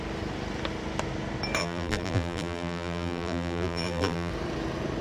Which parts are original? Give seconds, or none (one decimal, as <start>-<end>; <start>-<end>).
0.0-1.6; 4.3-5.0